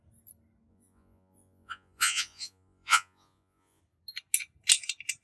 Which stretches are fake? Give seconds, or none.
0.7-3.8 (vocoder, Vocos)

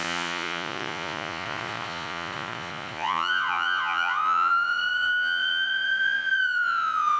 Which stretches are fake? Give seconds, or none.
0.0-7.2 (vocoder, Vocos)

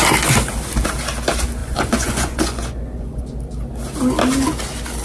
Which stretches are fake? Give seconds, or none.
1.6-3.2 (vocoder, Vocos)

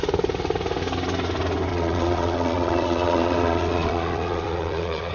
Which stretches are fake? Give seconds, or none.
1.7-5.1 (vocoder, Vocos)